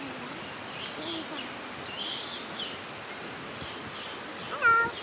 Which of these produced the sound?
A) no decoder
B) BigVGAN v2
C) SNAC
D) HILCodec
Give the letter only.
A